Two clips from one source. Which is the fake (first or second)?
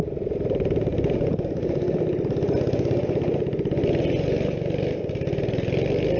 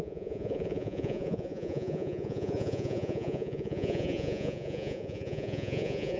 second